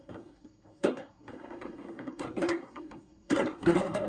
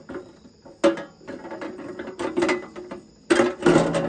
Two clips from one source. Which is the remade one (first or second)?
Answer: first